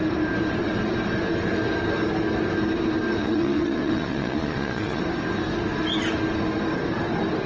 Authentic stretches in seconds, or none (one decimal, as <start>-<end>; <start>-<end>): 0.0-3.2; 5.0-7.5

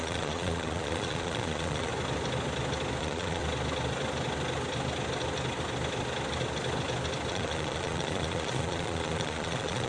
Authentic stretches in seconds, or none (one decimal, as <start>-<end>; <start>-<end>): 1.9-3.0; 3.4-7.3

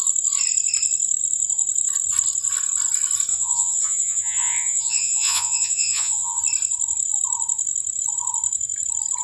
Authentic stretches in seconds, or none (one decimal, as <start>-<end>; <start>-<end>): 0.0-3.3; 6.4-9.2

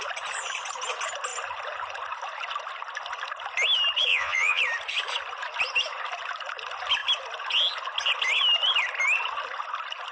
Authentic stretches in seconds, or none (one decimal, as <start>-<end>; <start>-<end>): 0.0-4.1; 4.6-10.1

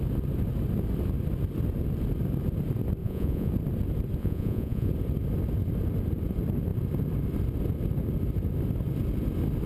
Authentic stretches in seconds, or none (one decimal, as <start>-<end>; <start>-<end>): 0.0-3.0; 3.5-4.2; 4.9-9.7

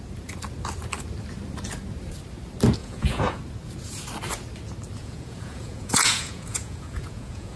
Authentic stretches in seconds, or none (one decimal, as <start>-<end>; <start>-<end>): 0.0-2.8; 3.4-5.0

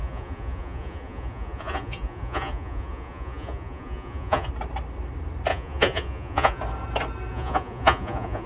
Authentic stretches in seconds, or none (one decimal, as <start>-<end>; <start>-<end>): 4.5-5.5; 6.6-7.3